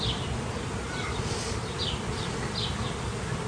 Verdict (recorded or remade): recorded